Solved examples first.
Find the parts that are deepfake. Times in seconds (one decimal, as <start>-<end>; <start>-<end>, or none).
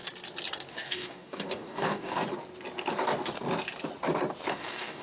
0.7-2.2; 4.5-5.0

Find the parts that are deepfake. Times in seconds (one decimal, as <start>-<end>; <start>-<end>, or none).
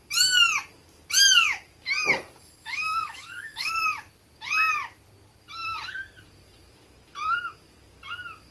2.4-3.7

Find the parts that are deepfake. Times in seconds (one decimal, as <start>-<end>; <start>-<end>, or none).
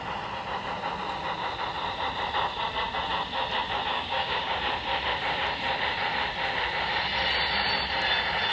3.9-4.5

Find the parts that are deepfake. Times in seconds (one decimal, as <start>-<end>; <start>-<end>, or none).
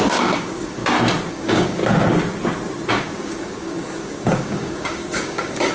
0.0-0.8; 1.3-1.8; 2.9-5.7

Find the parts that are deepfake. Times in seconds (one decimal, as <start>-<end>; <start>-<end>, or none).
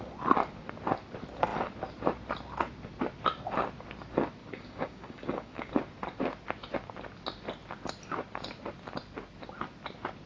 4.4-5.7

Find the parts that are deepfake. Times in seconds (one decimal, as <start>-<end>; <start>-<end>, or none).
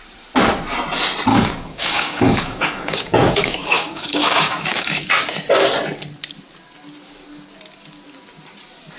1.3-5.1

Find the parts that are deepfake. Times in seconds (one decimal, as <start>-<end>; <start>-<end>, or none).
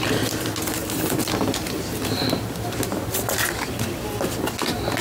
none